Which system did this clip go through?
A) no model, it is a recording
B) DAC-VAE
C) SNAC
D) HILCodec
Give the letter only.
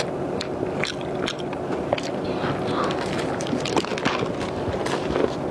A